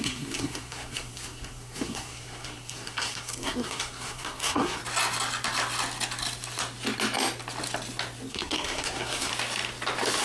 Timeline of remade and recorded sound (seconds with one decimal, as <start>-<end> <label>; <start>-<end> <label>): 0.0-4.8 remade; 4.8-8.3 recorded; 8.3-9.3 remade; 9.3-10.2 recorded